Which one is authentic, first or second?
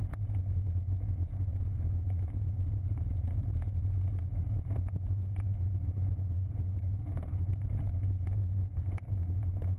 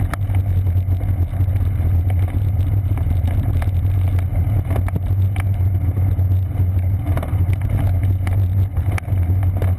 second